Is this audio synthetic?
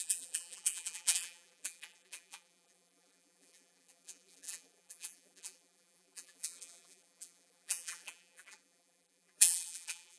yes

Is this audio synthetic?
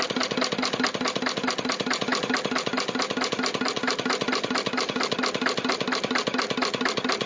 no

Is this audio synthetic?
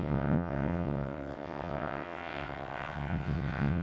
yes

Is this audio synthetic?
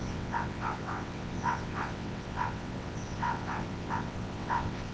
yes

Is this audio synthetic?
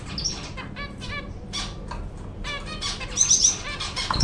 no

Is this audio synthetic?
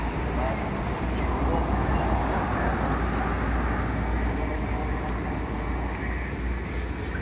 no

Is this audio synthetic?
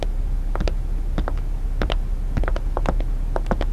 no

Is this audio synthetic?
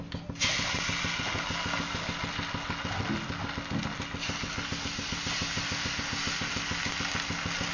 no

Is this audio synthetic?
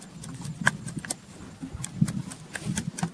no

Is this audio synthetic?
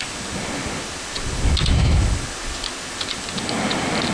no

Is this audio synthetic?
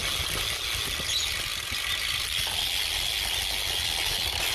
no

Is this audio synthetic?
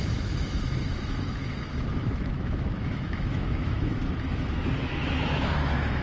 yes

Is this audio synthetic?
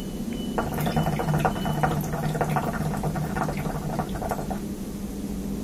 no